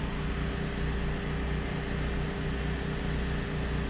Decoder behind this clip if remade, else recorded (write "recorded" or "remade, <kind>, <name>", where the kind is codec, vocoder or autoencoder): recorded